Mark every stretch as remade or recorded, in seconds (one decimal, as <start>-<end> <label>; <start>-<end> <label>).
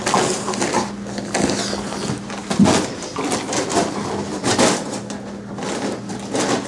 0.0-6.7 recorded